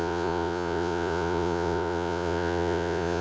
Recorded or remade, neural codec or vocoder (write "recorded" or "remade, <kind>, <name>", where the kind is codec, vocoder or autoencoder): remade, vocoder, Vocos